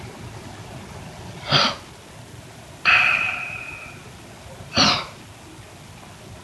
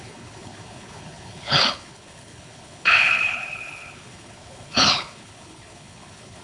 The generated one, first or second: second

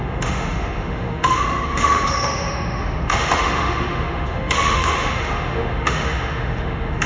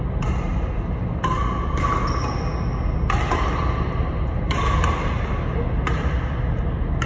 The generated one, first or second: first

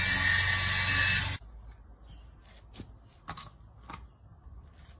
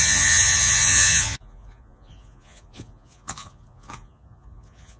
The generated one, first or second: second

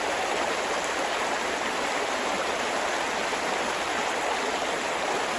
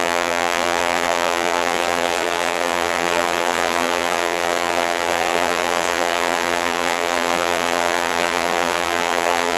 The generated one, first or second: second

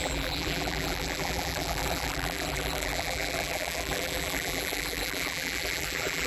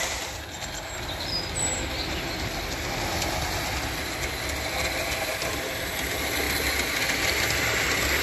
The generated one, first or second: first